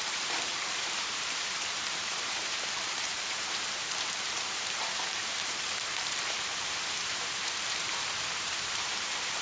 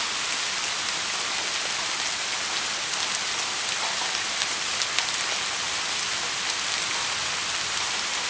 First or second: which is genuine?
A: second